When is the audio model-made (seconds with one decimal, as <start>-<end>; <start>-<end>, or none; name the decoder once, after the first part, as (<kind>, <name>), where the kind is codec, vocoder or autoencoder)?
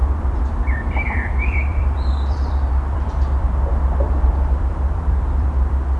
0.0-6.0 (vocoder, BigVGAN v2)